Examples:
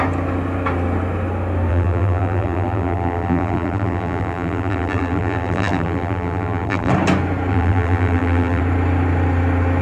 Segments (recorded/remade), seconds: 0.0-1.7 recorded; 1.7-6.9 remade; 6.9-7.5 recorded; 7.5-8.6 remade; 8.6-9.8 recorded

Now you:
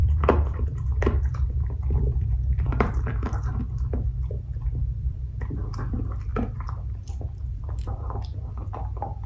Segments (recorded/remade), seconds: 0.0-3.2 remade; 3.2-4.1 recorded; 4.1-5.2 remade; 5.2-9.3 recorded

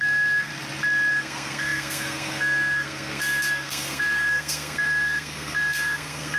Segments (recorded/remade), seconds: 0.0-0.5 remade; 0.5-1.1 recorded; 1.1-6.4 remade

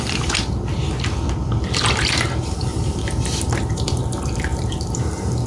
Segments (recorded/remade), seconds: 0.0-2.7 recorded; 2.7-4.0 remade; 4.0-4.5 recorded; 4.5-5.5 remade

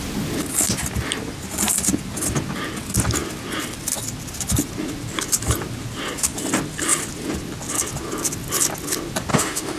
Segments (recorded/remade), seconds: 0.0-9.3 recorded; 9.3-9.8 remade

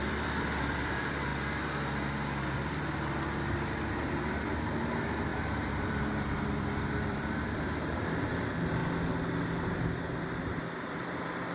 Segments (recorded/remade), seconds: 0.0-1.3 remade; 1.3-3.9 recorded; 3.9-8.8 remade; 8.8-10.6 recorded; 10.6-11.5 remade